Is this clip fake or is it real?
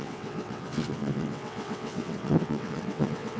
fake